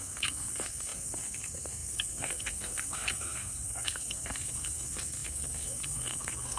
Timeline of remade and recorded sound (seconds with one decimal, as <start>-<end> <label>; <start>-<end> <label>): 0.0-6.6 remade